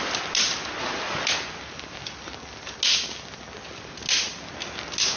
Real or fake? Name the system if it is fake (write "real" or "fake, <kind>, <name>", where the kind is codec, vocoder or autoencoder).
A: real